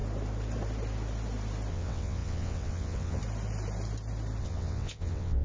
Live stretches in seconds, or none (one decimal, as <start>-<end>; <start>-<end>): 0.0-1.7; 3.2-4.4